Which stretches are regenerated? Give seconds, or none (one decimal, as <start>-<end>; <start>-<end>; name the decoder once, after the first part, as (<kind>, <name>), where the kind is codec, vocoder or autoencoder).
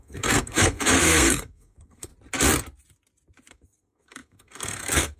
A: 0.0-2.1 (codec, SNAC); 3.5-5.2